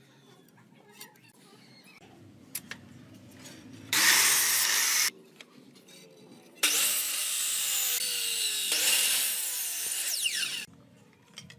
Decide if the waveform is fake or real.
fake